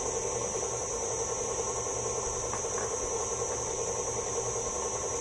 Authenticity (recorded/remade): recorded